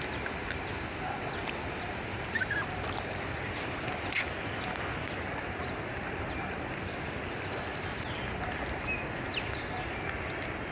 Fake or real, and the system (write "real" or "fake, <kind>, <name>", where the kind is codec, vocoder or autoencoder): real